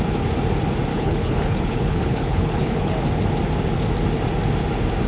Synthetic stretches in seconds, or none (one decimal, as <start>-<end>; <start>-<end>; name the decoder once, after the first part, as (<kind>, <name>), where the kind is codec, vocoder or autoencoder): 0.9-2.9 (codec, HILCodec)